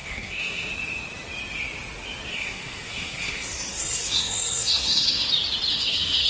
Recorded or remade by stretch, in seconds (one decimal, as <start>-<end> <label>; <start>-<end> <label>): 0.0-0.7 remade; 0.7-2.3 recorded; 2.3-5.3 remade; 5.3-5.7 recorded; 5.7-6.3 remade

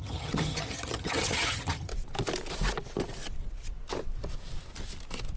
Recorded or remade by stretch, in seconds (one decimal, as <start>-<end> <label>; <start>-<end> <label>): 0.0-1.9 remade; 1.9-5.4 recorded